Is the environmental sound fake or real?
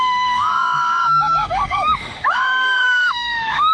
fake